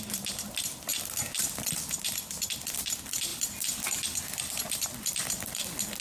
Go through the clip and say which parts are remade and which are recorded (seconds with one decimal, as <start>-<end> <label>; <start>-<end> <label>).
0.0-6.0 recorded

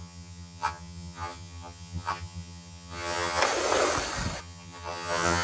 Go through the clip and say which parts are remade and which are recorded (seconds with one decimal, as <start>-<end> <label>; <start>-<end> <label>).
0.0-3.4 remade; 3.4-4.4 recorded; 4.4-5.4 remade

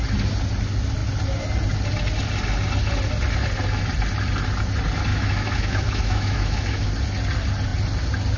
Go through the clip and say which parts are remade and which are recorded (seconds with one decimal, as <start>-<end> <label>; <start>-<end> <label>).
0.0-5.1 recorded; 5.1-6.9 remade; 6.9-8.4 recorded

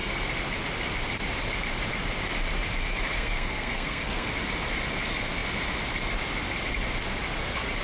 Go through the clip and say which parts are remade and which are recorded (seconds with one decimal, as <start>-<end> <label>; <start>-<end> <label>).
0.0-3.1 recorded; 3.1-4.3 remade; 4.3-7.8 recorded

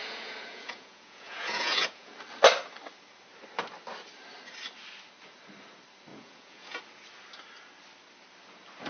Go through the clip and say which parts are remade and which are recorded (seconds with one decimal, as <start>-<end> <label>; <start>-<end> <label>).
0.0-2.1 remade; 2.1-6.1 recorded; 6.1-6.8 remade; 6.8-8.9 recorded